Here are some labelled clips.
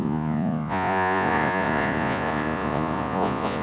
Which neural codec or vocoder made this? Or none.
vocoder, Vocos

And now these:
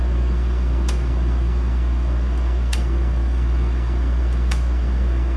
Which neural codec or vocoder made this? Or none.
codec, SNAC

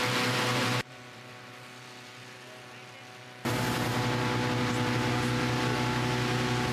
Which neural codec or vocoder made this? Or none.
none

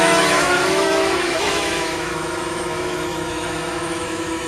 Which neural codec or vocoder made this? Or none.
autoencoder, DAC-VAE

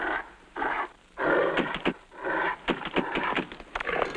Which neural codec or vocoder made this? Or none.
none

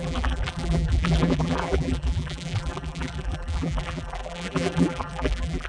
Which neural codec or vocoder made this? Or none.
vocoder, BigVGAN v2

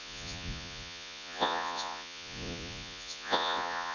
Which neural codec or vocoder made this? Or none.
vocoder, Vocos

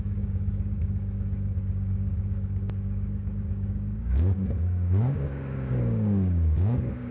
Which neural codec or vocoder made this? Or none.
codec, DAC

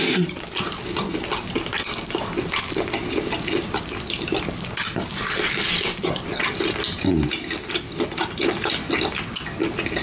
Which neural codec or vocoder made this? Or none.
none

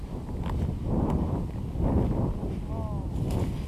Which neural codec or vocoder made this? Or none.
none